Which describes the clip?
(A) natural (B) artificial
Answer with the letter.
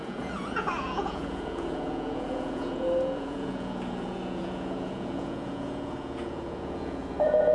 B